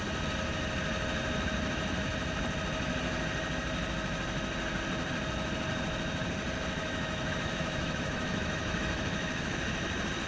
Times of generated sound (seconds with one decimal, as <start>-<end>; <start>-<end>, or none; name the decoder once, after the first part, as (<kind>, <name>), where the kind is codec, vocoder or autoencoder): 6.8-9.6 (autoencoder, DAC-VAE)